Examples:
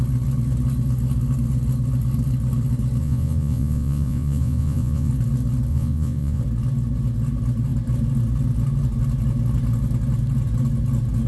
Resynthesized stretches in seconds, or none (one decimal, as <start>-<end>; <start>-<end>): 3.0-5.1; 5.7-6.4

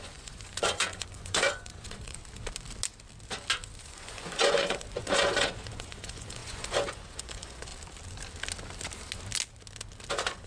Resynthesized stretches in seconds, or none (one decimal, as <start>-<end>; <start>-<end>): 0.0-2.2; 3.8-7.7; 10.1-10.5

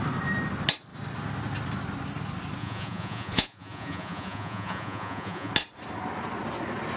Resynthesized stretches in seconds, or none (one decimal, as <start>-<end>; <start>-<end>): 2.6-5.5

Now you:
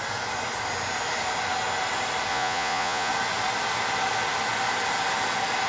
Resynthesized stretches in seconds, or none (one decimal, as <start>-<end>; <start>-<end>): 2.3-3.1

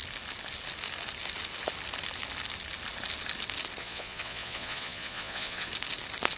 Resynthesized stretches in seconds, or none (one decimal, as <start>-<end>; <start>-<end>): 3.8-5.7

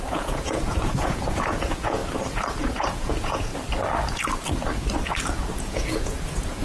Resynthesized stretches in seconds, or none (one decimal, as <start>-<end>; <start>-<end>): 0.0-2.0; 2.6-3.5; 5.6-6.6